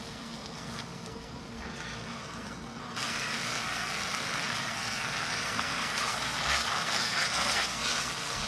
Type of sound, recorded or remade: remade